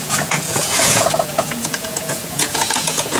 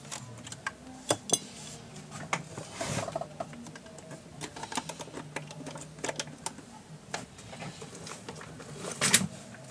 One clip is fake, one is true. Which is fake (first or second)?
first